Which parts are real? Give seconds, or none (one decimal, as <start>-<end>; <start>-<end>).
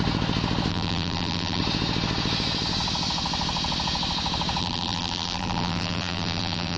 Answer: 0.0-0.7; 1.6-4.6